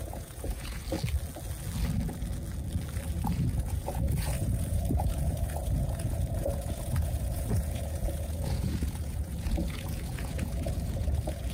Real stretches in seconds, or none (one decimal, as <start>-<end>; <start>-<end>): 0.8-3.3